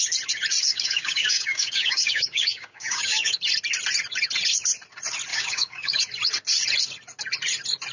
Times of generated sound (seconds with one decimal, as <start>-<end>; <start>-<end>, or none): 0.6-3.4; 5.3-6.0

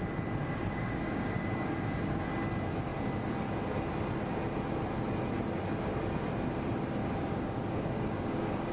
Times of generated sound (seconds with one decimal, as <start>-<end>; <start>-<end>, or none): 0.4-2.2; 7.0-8.7

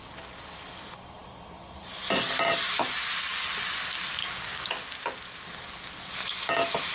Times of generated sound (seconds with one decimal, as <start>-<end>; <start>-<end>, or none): 4.2-4.7